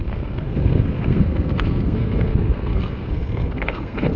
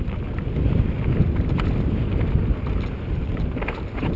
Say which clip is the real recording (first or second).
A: second